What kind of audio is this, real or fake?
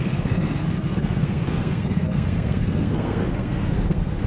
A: fake